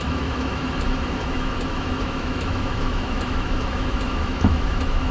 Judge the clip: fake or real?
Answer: fake